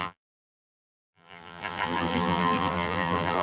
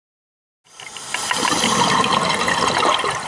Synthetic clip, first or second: first